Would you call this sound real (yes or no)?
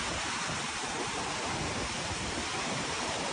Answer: yes